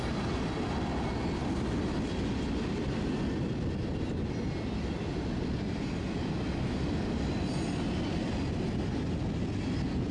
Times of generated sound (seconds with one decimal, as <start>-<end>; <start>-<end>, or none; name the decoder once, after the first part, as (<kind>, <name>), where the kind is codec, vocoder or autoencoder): none